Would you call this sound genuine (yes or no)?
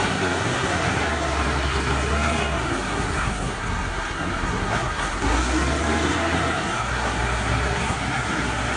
no